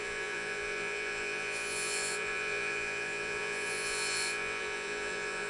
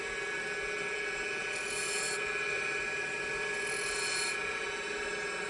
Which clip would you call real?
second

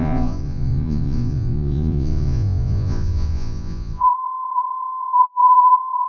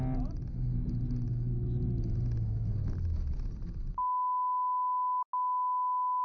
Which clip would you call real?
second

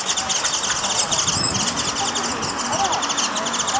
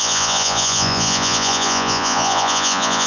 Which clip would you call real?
first